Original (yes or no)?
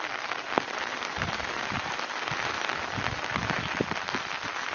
yes